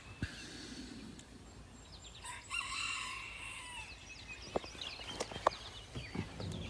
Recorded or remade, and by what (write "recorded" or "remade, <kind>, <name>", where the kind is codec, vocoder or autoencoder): recorded